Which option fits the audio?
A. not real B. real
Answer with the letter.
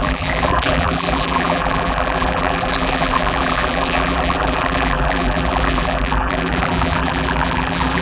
A